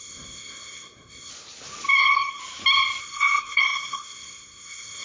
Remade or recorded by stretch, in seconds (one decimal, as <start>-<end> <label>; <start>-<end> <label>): 0.0-1.3 remade; 1.3-2.0 recorded; 2.0-2.4 remade; 2.4-3.0 recorded; 3.0-5.0 remade